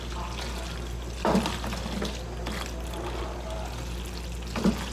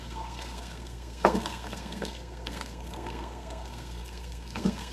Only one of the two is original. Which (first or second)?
first